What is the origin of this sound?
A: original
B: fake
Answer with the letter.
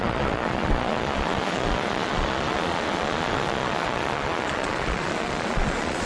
B